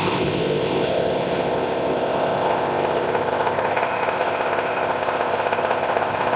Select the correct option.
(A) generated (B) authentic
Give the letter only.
A